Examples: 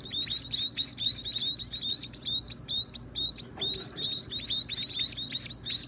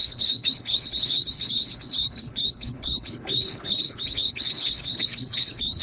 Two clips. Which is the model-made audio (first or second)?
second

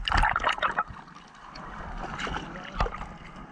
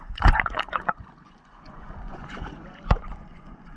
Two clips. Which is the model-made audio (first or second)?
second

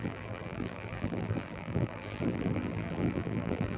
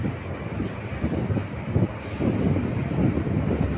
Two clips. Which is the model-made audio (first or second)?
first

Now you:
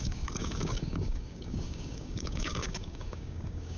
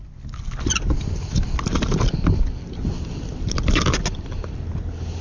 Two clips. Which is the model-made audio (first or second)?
first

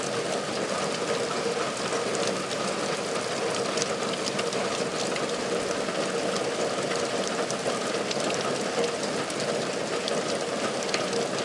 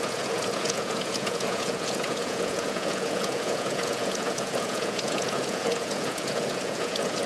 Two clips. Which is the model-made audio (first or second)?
second